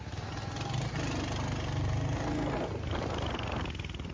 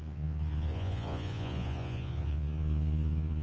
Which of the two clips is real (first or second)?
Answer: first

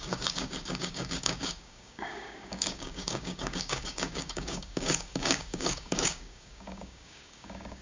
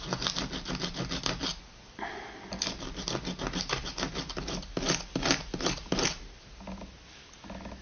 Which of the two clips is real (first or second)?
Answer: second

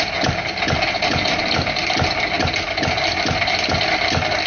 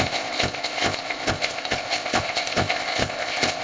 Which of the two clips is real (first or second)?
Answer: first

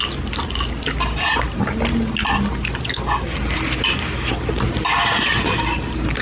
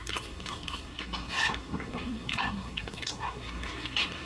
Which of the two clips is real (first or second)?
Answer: first